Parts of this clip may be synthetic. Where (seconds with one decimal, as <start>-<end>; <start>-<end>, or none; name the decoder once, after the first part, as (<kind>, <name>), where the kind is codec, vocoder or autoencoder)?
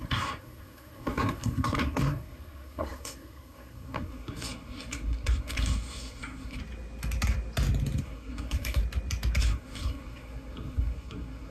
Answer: 0.0-6.6 (codec, SNAC); 8.0-8.8; 9.4-11.5